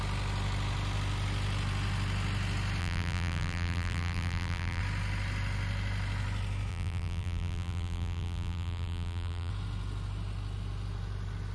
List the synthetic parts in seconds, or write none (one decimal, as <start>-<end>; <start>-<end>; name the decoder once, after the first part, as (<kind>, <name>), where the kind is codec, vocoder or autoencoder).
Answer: 2.8-4.8 (vocoder, BigVGAN v2); 6.7-9.5